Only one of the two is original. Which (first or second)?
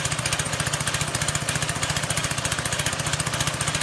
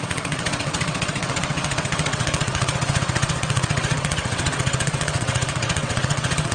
first